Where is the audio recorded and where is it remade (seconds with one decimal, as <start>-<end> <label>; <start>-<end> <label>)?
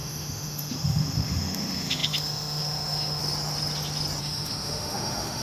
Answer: 0.0-3.2 remade; 3.2-4.2 recorded; 4.2-5.4 remade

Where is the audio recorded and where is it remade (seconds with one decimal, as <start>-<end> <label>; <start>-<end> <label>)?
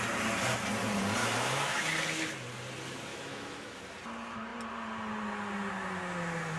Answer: 0.0-1.2 recorded; 1.2-1.8 remade; 1.8-3.1 recorded; 3.1-3.8 remade; 3.8-6.6 recorded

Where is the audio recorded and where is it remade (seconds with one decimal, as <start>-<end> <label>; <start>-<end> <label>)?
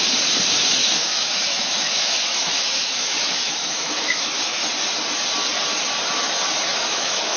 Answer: 0.0-0.8 recorded; 0.8-4.7 remade; 4.7-6.7 recorded; 6.7-7.4 remade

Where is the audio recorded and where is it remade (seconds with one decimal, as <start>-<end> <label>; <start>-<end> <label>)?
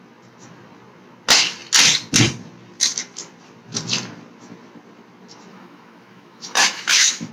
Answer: 0.0-5.5 recorded; 5.5-7.3 remade